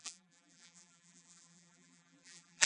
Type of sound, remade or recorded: remade